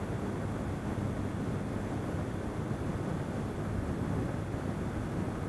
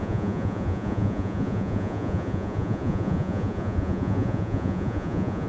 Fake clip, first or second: second